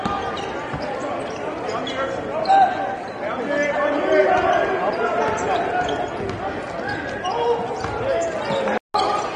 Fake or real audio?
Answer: real